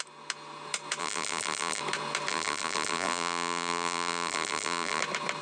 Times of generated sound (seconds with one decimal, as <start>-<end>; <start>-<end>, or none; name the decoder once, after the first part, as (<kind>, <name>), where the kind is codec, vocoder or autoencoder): 1.0-1.8 (vocoder, BigVGAN v2); 2.3-5.0